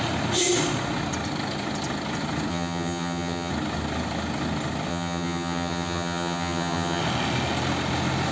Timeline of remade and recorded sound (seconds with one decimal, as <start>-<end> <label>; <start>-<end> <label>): 0.0-2.5 recorded; 2.5-3.5 remade; 3.5-4.9 recorded; 4.9-7.0 remade; 7.0-8.3 recorded